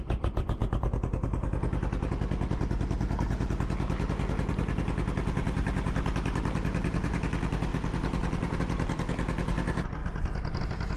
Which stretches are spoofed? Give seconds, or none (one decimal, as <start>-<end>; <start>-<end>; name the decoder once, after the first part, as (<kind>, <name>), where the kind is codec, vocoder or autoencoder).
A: none